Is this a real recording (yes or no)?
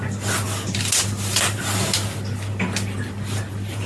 yes